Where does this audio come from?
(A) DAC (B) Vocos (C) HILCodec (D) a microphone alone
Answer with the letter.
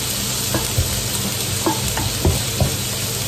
D